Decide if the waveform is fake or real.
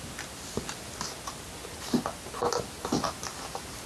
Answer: real